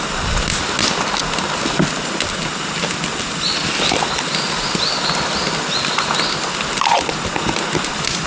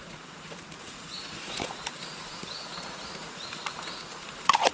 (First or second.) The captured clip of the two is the first